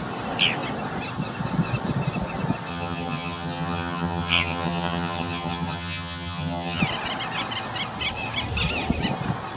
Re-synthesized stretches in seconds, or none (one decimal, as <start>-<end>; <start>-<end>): 2.7-6.8